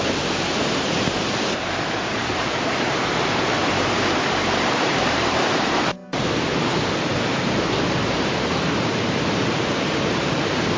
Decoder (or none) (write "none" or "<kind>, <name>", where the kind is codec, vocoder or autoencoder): vocoder, BigVGAN v2